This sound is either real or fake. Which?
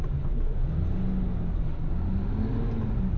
real